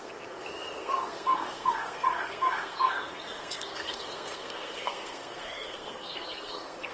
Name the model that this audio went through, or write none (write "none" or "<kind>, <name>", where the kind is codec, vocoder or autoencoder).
codec, SNAC